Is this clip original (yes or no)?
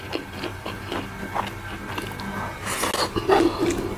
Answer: yes